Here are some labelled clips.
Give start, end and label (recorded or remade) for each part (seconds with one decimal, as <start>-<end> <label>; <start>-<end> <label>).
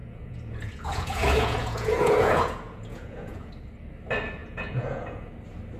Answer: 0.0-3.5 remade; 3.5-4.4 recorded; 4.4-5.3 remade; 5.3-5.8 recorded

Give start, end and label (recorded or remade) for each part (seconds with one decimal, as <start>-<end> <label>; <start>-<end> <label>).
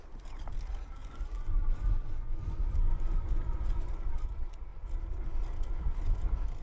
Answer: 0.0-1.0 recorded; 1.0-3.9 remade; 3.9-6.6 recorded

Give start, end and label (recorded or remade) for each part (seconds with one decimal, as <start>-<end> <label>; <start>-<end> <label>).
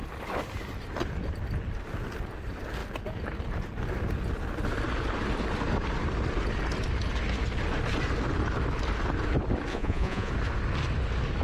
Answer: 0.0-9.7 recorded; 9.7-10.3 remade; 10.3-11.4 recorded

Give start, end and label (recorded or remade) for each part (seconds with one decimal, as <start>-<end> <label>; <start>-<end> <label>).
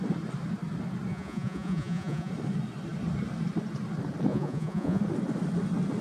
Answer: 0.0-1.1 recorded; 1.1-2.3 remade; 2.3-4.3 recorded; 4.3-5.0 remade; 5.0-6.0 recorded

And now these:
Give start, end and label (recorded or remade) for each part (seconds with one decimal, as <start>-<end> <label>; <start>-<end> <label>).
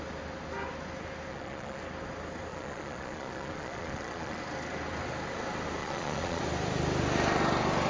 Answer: 0.0-1.3 recorded; 1.3-1.8 remade; 1.8-2.5 recorded; 2.5-4.4 remade; 4.4-5.8 recorded; 5.8-6.4 remade; 6.4-7.9 recorded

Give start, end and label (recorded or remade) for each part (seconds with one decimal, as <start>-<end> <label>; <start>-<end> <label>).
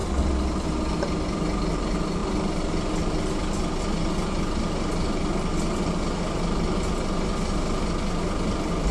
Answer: 0.0-8.9 recorded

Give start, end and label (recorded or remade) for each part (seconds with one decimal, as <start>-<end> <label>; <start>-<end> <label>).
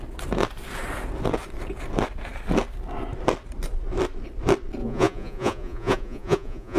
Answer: 0.0-4.8 recorded; 4.8-6.8 remade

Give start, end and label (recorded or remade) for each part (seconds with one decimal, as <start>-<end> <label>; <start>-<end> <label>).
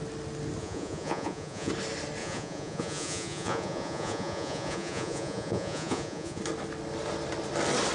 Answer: 0.0-0.6 recorded; 0.6-1.7 remade; 1.7-2.2 recorded; 2.2-6.4 remade; 6.4-7.9 recorded